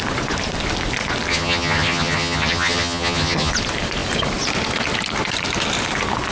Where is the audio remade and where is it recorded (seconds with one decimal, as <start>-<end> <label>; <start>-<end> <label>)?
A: 0.0-1.3 recorded; 1.3-3.5 remade; 3.5-6.3 recorded